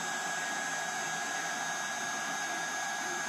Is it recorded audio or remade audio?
recorded